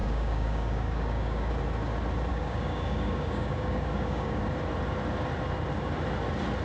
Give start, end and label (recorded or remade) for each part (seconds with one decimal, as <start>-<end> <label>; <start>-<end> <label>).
0.0-1.5 remade; 1.5-2.3 recorded; 2.3-4.4 remade; 4.4-6.6 recorded

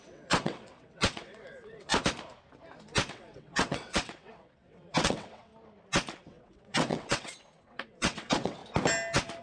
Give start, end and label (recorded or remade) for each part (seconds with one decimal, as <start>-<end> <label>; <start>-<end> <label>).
0.0-1.9 remade; 1.9-3.1 recorded; 3.1-5.5 remade; 5.5-6.2 recorded; 6.2-8.6 remade; 8.6-9.4 recorded